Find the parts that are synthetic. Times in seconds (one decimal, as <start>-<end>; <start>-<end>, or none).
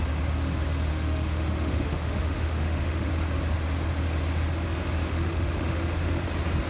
0.9-3.1; 5.1-6.2